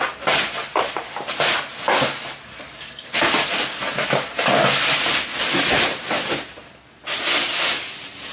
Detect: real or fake real